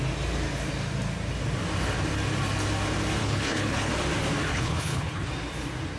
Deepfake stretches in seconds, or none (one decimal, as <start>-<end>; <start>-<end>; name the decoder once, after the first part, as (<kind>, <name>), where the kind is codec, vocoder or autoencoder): 3.2-3.9 (codec, HILCodec); 4.5-5.3

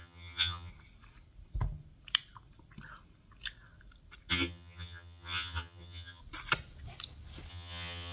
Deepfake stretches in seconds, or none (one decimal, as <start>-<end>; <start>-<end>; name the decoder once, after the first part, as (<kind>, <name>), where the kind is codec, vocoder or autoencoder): 0.0-0.7 (vocoder, HiFi-GAN); 4.3-6.2; 7.5-8.1

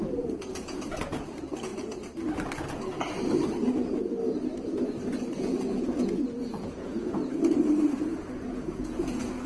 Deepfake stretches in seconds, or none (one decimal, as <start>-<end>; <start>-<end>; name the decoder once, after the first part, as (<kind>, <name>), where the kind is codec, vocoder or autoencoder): 0.0-1.7 (vocoder, Vocos); 5.4-7.2; 8.2-9.5

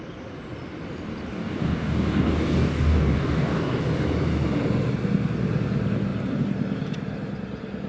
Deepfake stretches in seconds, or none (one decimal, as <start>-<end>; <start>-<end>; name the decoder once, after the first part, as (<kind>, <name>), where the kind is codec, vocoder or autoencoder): 1.3-3.8 (codec, DAC)

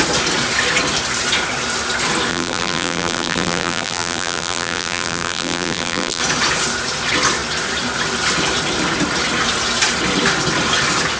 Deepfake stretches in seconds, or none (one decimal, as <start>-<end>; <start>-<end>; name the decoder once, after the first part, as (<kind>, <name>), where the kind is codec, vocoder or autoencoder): 2.3-6.2 (vocoder, BigVGAN v2)